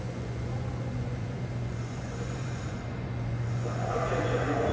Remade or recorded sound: remade